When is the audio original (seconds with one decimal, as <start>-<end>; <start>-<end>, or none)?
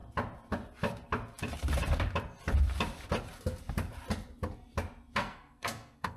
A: 0.0-5.2